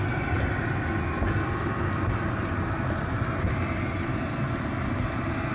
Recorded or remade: recorded